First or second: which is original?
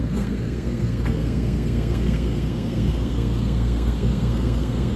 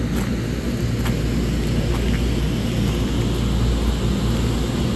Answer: second